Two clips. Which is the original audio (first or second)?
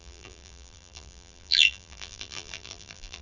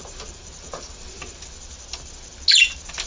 second